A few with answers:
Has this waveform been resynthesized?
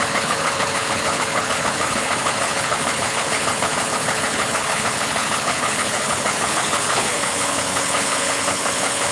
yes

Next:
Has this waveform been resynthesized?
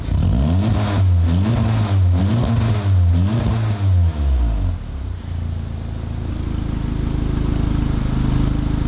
no